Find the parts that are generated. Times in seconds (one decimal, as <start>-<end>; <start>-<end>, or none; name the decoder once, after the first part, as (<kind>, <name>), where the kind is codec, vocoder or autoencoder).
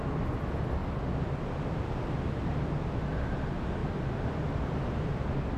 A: 3.8-4.5 (vocoder, BigVGAN v2)